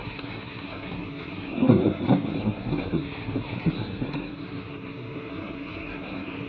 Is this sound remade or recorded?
remade